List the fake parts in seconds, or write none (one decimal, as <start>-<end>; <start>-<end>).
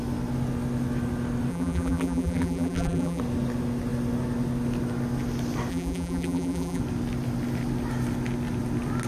1.5-3.2; 5.7-6.8